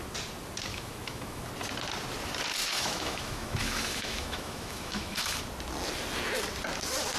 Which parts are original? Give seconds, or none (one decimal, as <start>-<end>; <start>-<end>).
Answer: 0.0-0.7; 1.5-2.6; 5.4-7.2